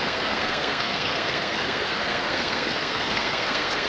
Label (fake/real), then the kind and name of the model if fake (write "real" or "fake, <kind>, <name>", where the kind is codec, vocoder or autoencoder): fake, codec, SNAC